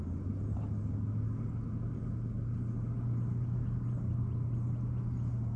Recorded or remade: recorded